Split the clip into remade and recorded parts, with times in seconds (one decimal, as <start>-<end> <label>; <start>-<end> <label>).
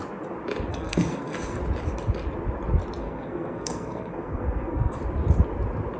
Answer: 0.0-0.7 recorded; 0.7-1.6 remade; 1.6-3.0 recorded; 3.0-5.0 remade; 5.0-6.0 recorded